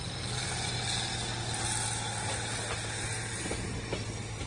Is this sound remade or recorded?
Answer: recorded